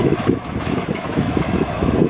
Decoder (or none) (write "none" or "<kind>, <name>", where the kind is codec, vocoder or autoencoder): autoencoder, DAC-VAE